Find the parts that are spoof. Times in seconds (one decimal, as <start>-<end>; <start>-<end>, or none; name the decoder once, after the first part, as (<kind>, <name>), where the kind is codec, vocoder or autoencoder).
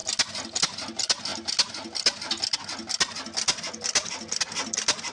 none